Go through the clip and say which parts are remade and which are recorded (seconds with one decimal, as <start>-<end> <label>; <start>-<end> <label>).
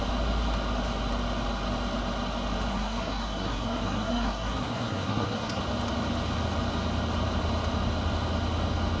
0.0-2.7 recorded; 2.7-5.6 remade; 5.6-9.0 recorded